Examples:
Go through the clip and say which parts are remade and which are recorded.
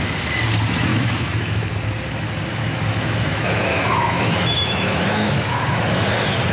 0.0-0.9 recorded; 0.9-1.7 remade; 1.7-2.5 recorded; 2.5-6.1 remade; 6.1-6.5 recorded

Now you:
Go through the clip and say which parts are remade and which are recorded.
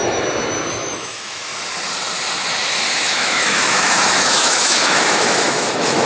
0.0-0.7 recorded; 0.7-1.5 remade; 1.5-2.9 recorded; 2.9-6.1 remade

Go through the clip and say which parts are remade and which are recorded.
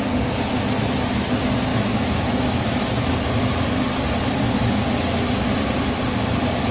0.0-1.7 recorded; 1.7-3.1 remade; 3.1-6.7 recorded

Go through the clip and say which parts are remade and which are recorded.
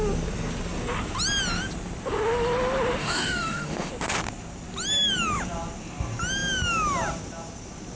0.0-3.0 recorded; 3.0-3.9 remade; 3.9-8.0 recorded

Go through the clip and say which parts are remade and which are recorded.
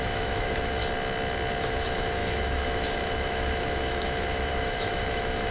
0.0-0.8 remade; 0.8-1.6 recorded; 1.6-5.5 remade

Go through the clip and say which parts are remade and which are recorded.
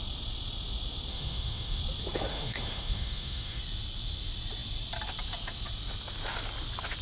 0.0-1.1 recorded; 1.1-1.8 remade; 1.8-2.3 recorded; 2.3-3.6 remade; 3.6-7.0 recorded